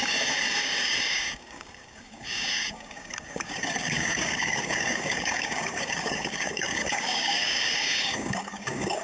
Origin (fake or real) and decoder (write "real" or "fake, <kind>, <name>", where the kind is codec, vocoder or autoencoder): fake, codec, DAC